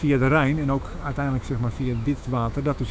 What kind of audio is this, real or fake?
fake